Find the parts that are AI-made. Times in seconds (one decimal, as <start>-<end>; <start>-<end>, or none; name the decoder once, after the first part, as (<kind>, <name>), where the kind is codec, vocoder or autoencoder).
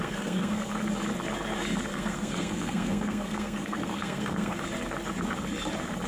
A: 0.0-0.7 (codec, SNAC); 1.9-4.6